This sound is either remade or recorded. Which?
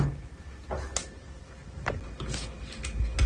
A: recorded